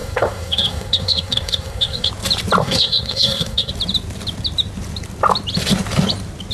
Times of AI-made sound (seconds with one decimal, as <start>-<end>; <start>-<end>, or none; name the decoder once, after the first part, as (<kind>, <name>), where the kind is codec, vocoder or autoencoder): 0.0-2.1 (codec, SNAC); 2.6-3.7